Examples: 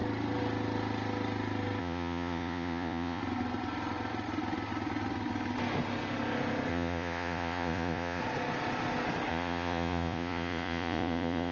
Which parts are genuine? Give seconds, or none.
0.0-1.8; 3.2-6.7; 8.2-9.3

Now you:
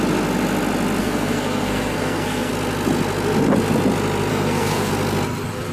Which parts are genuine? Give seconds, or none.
0.0-1.0; 2.5-4.3; 4.9-5.7